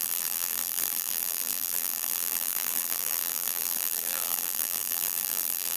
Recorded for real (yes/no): no